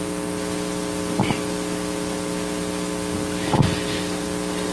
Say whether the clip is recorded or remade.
recorded